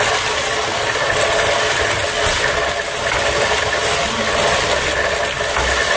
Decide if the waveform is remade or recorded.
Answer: recorded